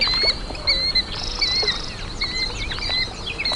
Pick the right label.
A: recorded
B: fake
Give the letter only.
A